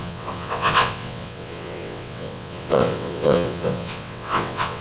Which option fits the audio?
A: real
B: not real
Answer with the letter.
B